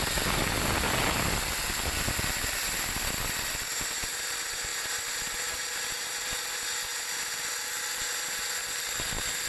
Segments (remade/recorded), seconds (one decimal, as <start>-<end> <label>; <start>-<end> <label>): 0.0-9.5 recorded